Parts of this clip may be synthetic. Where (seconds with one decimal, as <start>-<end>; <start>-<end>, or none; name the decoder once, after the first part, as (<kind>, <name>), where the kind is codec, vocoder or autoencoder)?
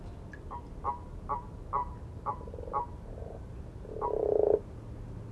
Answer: 1.8-4.2 (vocoder, BigVGAN v2)